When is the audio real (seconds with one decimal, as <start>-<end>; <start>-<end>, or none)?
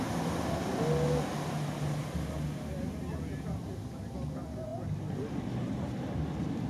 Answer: 0.0-6.7